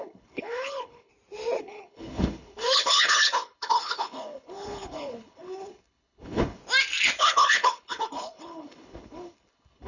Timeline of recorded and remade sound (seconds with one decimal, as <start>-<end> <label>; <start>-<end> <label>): 0.0-1.1 remade; 1.1-1.6 recorded; 1.6-6.6 remade; 6.6-7.2 recorded; 7.2-9.9 remade

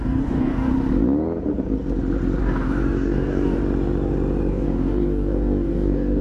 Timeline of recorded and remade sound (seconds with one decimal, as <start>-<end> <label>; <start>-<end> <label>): 0.0-0.7 remade; 0.7-2.4 recorded; 2.4-3.6 remade; 3.6-4.5 recorded; 4.5-6.2 remade

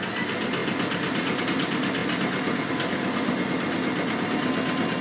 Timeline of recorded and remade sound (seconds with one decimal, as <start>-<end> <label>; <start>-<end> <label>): 0.0-5.0 recorded

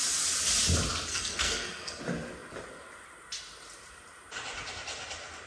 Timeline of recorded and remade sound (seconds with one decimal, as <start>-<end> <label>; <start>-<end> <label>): 0.0-1.1 recorded; 1.1-2.0 remade; 2.0-5.5 recorded

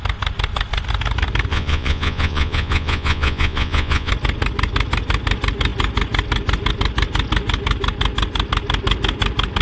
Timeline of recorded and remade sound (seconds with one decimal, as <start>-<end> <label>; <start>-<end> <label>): 0.0-1.5 recorded; 1.5-4.1 remade; 4.1-9.6 recorded

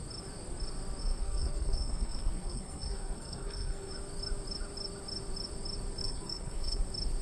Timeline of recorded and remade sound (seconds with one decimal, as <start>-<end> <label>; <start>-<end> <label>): 0.0-1.0 recorded; 1.0-3.9 remade; 3.9-6.0 recorded; 6.0-6.8 remade; 6.8-7.2 recorded